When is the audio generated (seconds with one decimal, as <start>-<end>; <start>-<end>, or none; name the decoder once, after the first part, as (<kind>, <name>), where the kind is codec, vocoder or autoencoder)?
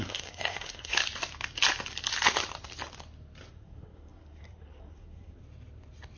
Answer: 0.0-1.0 (codec, SNAC); 3.5-5.4